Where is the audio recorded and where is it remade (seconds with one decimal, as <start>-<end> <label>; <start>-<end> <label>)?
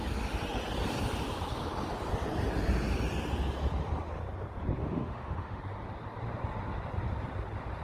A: 0.0-4.8 recorded; 4.8-5.6 remade; 5.6-7.8 recorded